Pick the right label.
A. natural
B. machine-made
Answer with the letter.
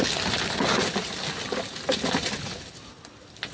A